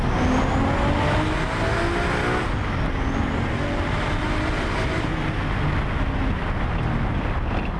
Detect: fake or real real